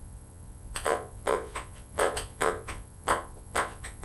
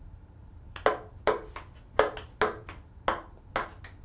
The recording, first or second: second